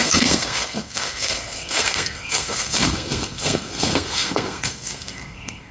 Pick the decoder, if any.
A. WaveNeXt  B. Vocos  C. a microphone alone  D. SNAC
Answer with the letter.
D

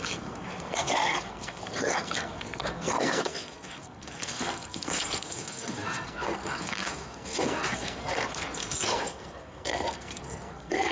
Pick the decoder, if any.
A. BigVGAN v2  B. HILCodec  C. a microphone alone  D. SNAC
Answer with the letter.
D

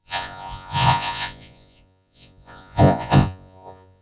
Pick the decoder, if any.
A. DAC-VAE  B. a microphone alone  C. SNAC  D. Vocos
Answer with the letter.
D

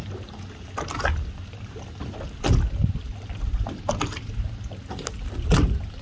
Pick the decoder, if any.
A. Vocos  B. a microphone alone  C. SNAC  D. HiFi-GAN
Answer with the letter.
B